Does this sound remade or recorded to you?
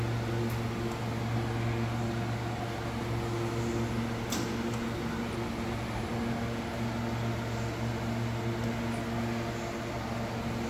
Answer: recorded